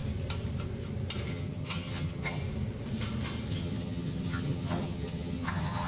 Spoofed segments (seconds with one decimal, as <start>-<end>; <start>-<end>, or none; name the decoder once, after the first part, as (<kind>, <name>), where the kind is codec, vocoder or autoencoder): 1.3-2.4 (vocoder, HiFi-GAN); 3.5-5.9